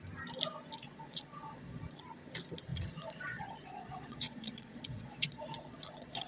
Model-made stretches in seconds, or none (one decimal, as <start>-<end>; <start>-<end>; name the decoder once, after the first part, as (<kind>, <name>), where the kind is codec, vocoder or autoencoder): 0.8-2.0 (vocoder, Vocos); 2.7-6.3

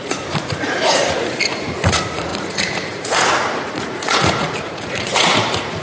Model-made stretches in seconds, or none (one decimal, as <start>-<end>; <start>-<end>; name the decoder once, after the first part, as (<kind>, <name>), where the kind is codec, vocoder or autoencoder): 0.0-5.8 (vocoder, Vocos)

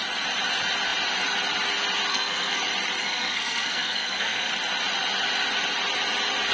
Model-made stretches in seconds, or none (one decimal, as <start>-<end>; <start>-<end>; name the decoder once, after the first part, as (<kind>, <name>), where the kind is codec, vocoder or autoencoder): 2.1-2.6 (codec, SNAC); 3.0-4.5

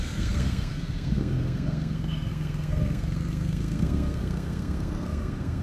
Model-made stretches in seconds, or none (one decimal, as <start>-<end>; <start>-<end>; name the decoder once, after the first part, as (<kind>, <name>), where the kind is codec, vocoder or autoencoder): 0.0-5.6 (codec, SNAC)

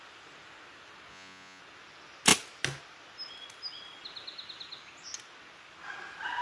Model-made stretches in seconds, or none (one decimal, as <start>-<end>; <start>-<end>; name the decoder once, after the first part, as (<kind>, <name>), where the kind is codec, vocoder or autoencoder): 1.1-1.6 (vocoder, Vocos)

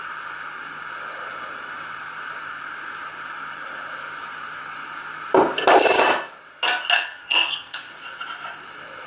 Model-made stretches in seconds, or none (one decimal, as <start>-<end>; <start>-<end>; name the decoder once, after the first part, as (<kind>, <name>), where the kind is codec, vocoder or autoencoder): 6.9-7.9 (codec, SNAC)